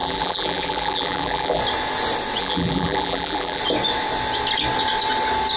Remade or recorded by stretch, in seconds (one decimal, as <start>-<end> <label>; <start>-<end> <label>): 0.0-1.6 remade; 1.6-2.4 recorded; 2.4-3.6 remade; 3.6-5.6 recorded